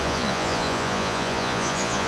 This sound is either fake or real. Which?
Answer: fake